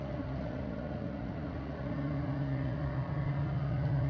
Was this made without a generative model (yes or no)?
no